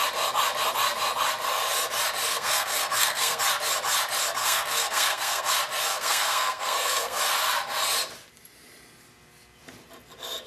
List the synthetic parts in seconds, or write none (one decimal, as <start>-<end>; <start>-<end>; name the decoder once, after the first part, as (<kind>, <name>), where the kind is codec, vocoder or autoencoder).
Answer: 2.3-3.4 (codec, SNAC); 4.4-5.5; 5.9-7.2